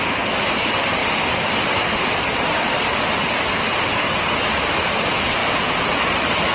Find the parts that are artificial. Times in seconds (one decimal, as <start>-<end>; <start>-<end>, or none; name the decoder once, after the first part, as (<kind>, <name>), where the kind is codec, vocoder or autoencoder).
5.4-6.0 (vocoder, Vocos)